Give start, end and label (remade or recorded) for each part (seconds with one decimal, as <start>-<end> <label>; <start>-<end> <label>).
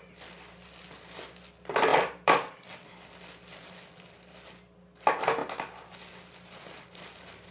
0.0-1.9 recorded; 1.9-2.9 remade; 2.9-5.4 recorded; 5.4-6.1 remade; 6.1-7.5 recorded